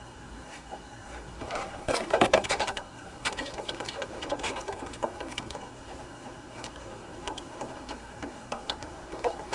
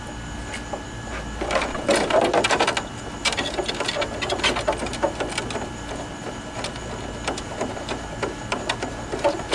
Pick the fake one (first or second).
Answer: first